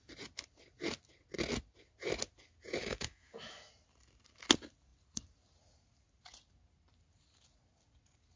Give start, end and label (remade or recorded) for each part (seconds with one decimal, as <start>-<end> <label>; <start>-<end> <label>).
0.0-2.8 recorded; 2.8-3.7 remade; 3.7-8.4 recorded